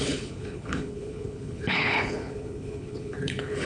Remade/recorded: remade